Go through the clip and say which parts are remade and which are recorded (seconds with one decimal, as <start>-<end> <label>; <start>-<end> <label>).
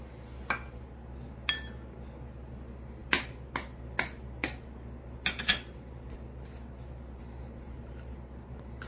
0.0-8.9 recorded